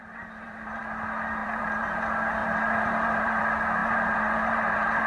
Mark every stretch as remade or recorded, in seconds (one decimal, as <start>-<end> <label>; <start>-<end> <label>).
0.0-0.8 remade; 0.8-1.4 recorded; 1.4-2.0 remade; 2.0-2.4 recorded; 2.4-3.4 remade; 3.4-3.8 recorded; 3.8-5.1 remade